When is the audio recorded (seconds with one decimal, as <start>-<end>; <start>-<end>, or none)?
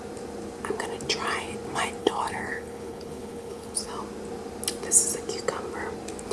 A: 0.0-2.0; 3.9-6.3